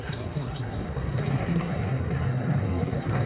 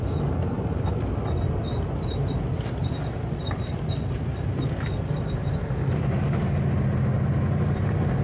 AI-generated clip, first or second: first